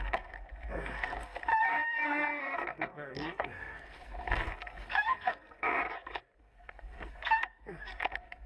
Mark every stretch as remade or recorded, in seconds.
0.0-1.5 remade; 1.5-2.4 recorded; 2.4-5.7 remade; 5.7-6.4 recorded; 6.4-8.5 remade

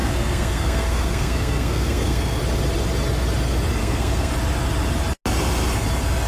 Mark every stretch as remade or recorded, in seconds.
0.0-2.4 remade; 2.4-3.8 recorded; 3.8-4.3 remade; 4.3-6.3 recorded

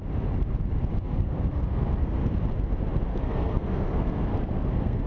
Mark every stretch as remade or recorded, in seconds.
0.0-0.9 recorded; 0.9-2.3 remade; 2.3-3.1 recorded; 3.1-5.1 remade

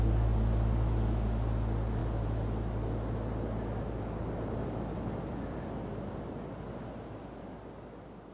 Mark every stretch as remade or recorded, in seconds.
0.0-8.3 recorded

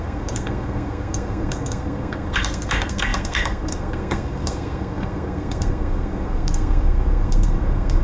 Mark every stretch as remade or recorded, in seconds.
0.0-8.0 remade

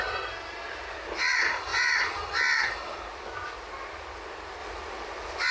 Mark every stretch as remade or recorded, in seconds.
0.0-5.5 recorded

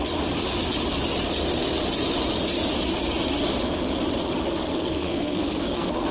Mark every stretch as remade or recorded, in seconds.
0.0-4.7 recorded; 4.7-6.1 remade

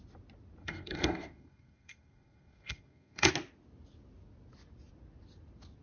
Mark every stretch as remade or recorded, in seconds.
0.0-0.6 recorded; 0.6-3.3 remade; 3.3-5.8 recorded